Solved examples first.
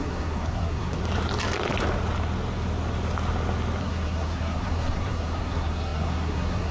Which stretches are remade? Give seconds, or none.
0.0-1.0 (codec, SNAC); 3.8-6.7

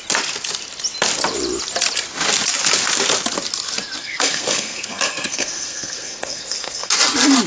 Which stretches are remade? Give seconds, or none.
4.0-6.9 (codec, SNAC)